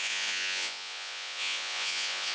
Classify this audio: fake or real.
fake